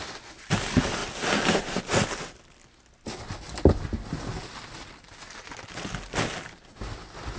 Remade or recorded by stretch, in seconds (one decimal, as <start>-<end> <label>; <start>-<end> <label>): 0.0-7.4 recorded